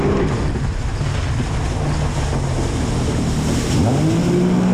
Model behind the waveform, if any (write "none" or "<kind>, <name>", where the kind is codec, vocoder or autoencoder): none